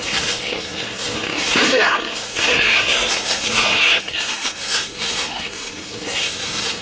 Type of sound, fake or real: fake